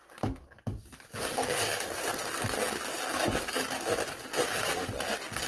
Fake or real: real